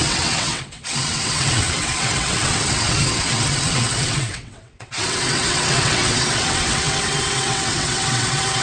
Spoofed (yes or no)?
yes